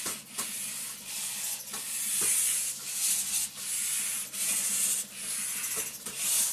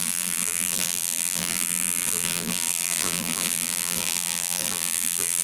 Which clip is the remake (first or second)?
second